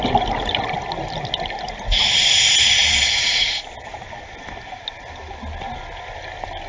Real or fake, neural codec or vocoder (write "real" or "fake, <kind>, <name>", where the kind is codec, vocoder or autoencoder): real